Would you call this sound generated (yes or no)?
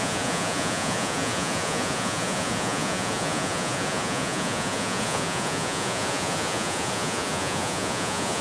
yes